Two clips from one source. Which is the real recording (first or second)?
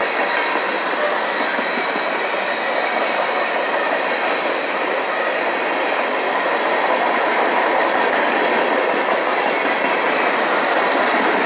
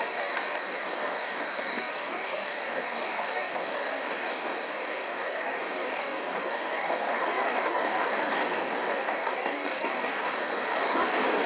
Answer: first